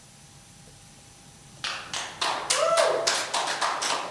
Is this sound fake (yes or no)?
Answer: no